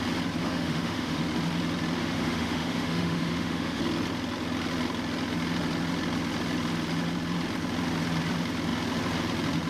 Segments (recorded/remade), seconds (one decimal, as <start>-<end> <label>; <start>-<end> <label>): 0.0-0.4 recorded; 0.4-1.2 remade; 1.2-2.0 recorded; 2.0-3.8 remade; 3.8-9.7 recorded